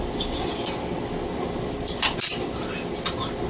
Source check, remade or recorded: recorded